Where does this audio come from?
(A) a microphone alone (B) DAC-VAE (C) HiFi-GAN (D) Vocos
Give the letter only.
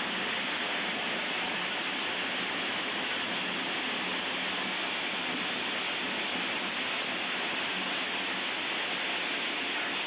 A